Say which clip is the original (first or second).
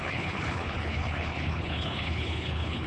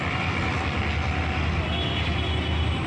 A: second